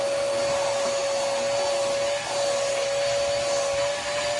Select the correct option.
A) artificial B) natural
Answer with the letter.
B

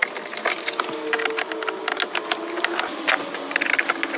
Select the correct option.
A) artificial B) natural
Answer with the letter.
B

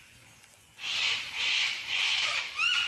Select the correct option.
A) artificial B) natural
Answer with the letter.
A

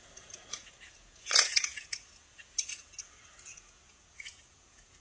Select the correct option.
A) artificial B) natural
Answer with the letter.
A